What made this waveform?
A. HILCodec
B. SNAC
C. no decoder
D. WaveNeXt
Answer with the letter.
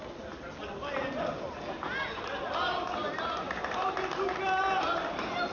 C